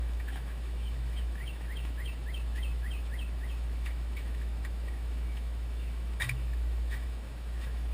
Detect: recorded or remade remade